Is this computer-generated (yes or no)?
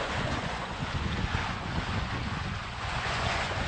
yes